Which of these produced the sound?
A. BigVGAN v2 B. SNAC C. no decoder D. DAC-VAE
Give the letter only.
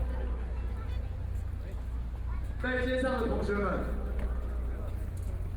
C